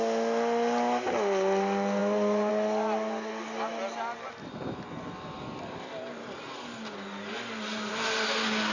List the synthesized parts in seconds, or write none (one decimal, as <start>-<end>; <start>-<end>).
none